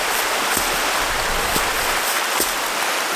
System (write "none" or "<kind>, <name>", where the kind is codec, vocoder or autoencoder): none